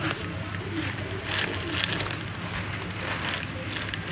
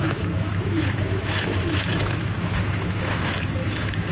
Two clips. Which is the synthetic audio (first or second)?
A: second